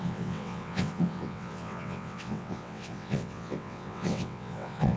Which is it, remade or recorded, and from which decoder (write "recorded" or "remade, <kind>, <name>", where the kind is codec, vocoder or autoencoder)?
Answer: remade, vocoder, WaveNeXt